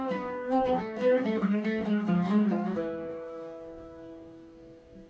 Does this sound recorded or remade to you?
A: remade